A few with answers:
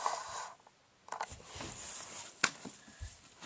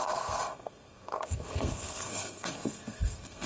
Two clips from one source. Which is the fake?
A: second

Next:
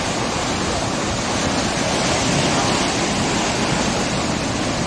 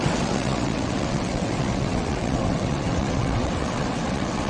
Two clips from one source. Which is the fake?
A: second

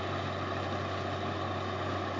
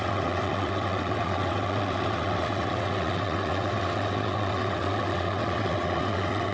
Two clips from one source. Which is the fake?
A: second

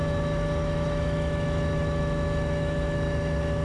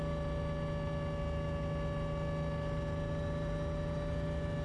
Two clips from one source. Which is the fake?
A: first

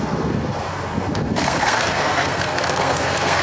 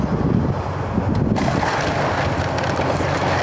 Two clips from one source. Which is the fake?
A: first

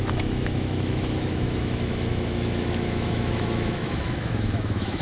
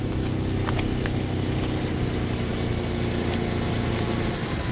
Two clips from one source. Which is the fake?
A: first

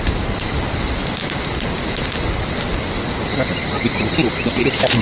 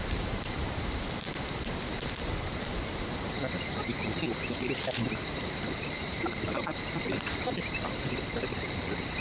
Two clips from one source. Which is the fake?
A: second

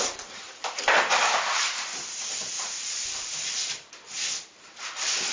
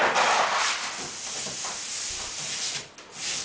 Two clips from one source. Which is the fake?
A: first